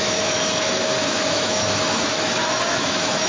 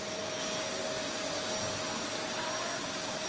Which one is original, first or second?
second